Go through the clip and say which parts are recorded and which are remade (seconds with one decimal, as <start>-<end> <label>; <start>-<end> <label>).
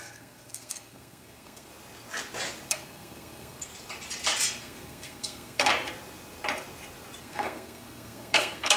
0.0-1.7 remade; 1.7-2.7 recorded; 2.7-3.7 remade; 3.7-4.6 recorded; 4.6-5.7 remade; 5.7-7.2 recorded; 7.2-8.8 remade